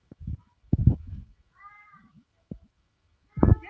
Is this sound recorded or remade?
remade